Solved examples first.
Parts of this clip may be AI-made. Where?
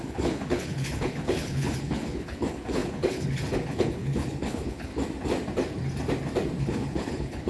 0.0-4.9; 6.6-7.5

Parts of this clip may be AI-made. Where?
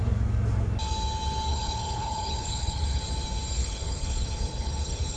1.5-3.0; 3.6-5.2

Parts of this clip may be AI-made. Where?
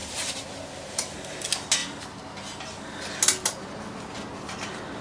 none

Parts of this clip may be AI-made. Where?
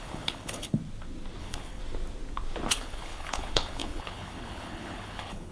0.0-0.8; 1.4-1.8; 2.7-5.5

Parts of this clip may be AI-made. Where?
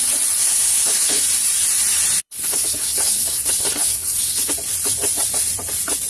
0.4-1.2; 2.2-4.5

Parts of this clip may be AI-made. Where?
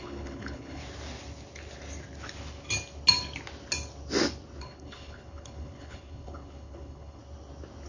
0.0-0.8; 4.6-7.2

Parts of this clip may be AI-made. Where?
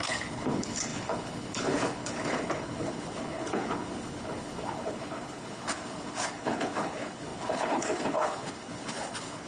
0.0-9.5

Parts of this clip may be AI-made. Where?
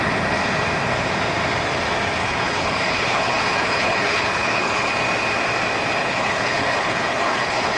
2.2-4.9; 6.0-7.8